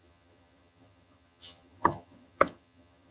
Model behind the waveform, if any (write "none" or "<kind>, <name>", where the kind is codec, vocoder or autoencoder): vocoder, HiFi-GAN